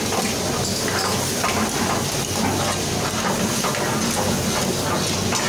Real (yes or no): yes